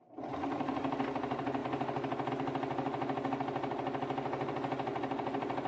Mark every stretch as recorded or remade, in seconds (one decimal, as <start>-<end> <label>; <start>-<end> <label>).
0.0-5.7 recorded